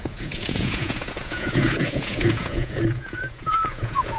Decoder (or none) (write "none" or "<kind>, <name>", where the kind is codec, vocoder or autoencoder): vocoder, Vocos